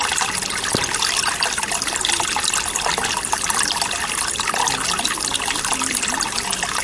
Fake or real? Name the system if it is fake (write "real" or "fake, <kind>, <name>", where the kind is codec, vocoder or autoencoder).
real